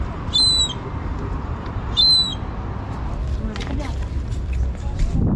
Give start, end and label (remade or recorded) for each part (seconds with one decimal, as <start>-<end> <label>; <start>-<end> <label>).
0.0-2.3 remade; 2.3-4.3 recorded; 4.3-5.4 remade